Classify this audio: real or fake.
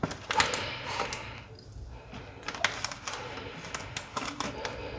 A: real